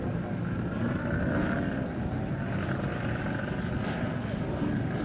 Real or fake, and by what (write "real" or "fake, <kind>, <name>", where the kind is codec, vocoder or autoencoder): real